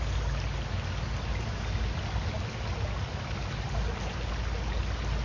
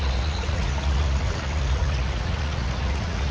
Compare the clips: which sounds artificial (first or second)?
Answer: second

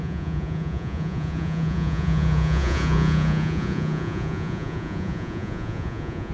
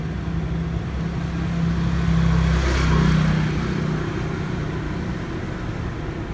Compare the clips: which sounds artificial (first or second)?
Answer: first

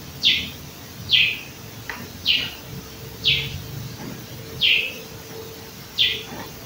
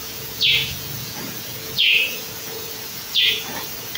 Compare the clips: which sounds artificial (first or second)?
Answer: second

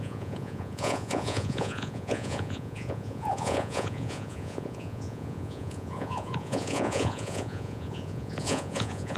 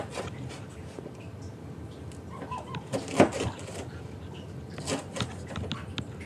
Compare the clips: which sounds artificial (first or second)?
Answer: first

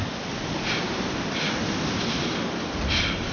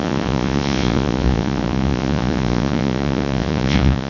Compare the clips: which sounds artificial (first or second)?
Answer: second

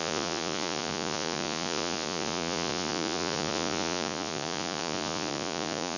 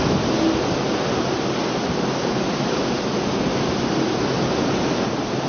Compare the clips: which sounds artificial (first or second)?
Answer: first